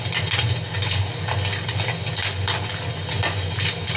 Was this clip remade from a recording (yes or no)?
no